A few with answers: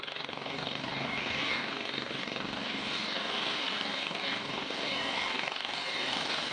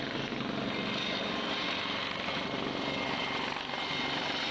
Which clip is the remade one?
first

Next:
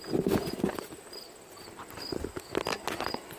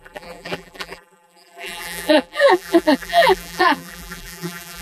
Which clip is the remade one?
second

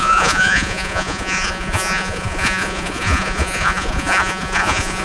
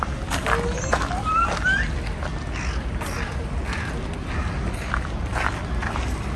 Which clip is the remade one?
first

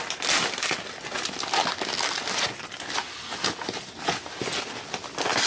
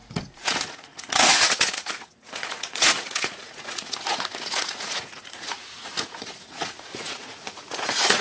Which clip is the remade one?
second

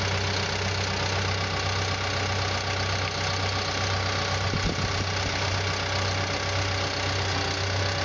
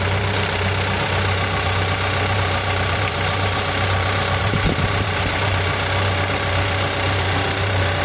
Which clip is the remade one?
second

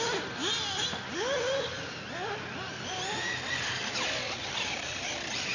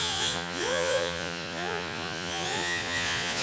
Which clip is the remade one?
second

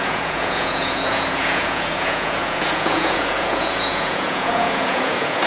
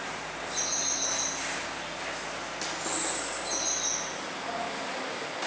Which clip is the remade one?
first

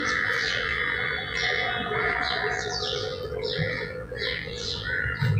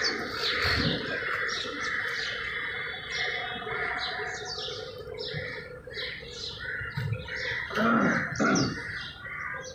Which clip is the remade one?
first